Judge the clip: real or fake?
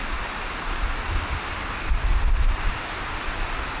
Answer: real